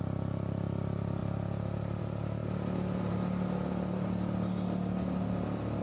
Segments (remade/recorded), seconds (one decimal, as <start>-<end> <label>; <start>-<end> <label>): 0.0-5.8 recorded